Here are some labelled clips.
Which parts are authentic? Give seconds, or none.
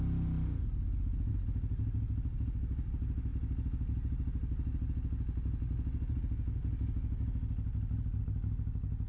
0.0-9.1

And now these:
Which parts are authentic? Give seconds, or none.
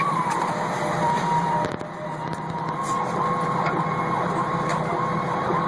4.7-5.3